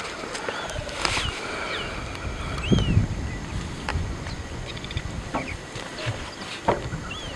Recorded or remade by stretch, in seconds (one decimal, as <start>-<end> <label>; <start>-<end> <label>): 0.0-3.9 recorded; 3.9-5.1 remade; 5.1-7.4 recorded